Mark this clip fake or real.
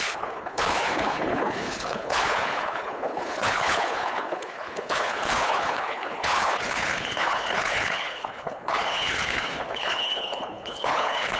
fake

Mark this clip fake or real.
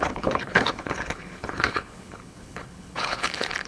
fake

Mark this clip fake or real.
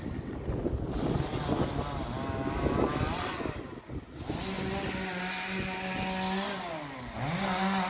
real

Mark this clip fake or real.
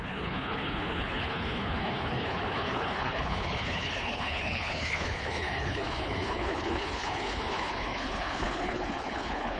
fake